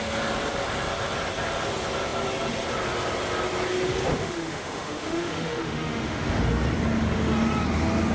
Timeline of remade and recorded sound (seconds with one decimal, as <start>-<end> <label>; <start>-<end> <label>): 0.0-4.1 recorded; 4.1-6.4 remade; 6.4-8.1 recorded